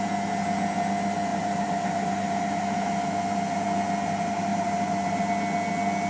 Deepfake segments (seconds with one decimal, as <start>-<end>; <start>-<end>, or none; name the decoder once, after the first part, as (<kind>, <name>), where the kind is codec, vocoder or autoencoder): 1.3-3.1 (vocoder, BigVGAN v2); 4.5-5.2